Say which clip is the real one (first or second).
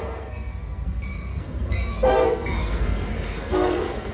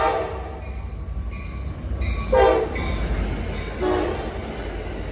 second